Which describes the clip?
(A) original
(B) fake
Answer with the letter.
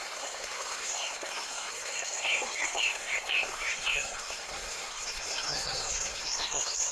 B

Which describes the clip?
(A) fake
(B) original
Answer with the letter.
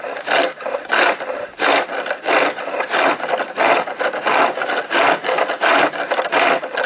B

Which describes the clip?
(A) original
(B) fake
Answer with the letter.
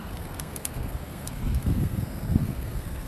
B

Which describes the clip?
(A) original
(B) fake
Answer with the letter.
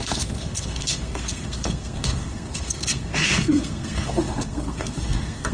B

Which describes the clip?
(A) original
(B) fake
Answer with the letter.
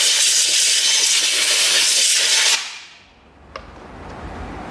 A